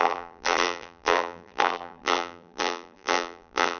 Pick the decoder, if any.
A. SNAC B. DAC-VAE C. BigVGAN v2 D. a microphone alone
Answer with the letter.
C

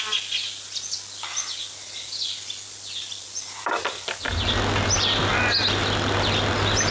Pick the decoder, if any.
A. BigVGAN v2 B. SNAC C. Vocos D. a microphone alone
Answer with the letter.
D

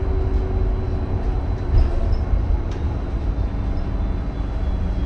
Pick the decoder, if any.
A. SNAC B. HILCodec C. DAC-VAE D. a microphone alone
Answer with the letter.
D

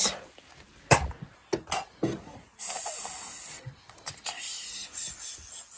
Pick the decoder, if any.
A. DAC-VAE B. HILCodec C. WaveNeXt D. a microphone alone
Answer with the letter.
D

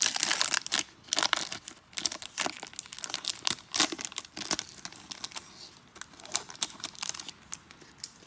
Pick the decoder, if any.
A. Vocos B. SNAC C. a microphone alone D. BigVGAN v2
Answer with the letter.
C